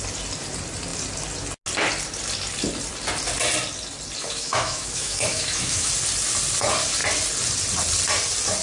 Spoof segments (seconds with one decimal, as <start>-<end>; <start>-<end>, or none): 4.2-5.9

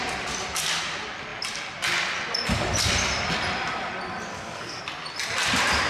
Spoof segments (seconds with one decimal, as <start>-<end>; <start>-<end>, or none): 4.3-4.8

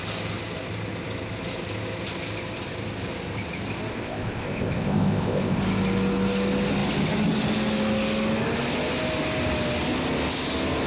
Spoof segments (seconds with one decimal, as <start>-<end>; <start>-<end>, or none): 3.9-5.6

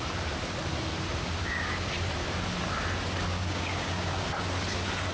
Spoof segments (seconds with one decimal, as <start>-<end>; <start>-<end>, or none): 1.4-1.9; 3.3-4.2

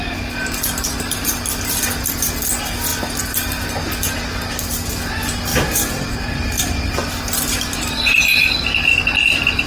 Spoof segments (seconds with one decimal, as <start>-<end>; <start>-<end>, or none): none

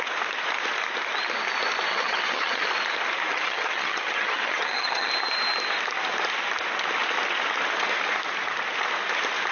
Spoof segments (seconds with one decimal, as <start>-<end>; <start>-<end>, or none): 1.9-2.7; 3.3-5.1

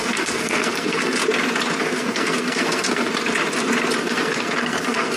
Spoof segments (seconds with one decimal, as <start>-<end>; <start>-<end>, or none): 0.0-1.2; 1.8-3.1; 4.0-5.2